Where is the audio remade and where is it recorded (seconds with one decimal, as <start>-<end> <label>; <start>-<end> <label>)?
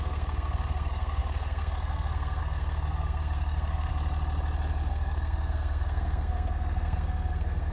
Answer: 0.0-3.9 remade; 3.9-4.9 recorded; 4.9-7.7 remade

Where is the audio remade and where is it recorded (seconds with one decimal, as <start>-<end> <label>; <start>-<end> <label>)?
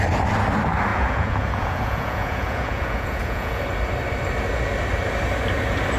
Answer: 0.0-0.9 recorded; 0.9-3.6 remade; 3.6-6.0 recorded